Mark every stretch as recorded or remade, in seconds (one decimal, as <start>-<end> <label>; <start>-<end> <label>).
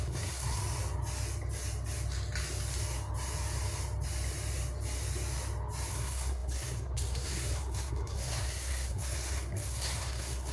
0.0-0.6 remade; 0.6-5.9 recorded; 5.9-10.5 remade